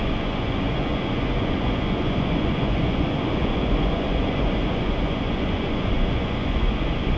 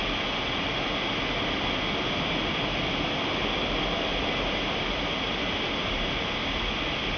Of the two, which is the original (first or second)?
second